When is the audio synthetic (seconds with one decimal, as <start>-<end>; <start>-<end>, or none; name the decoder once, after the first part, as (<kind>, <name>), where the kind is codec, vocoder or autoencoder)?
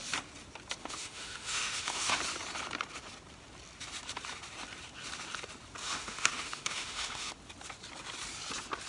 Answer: 0.8-2.2 (autoencoder, DAC-VAE); 5.8-7.3